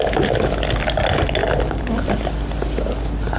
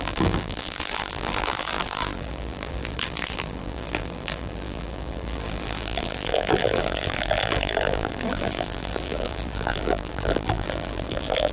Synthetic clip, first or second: second